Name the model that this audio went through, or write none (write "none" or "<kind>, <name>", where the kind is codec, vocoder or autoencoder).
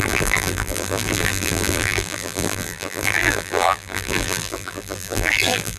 vocoder, BigVGAN v2